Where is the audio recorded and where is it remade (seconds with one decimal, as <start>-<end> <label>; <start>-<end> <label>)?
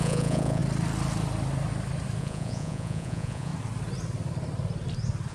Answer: 0.0-0.6 remade; 0.6-2.2 recorded; 2.2-3.5 remade; 3.5-5.3 recorded